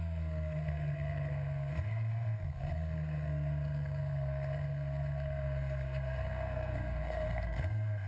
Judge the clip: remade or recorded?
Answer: remade